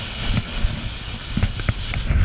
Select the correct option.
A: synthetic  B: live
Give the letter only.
B